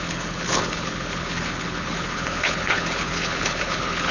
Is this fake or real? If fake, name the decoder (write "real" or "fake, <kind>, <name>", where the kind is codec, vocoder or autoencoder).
fake, codec, HILCodec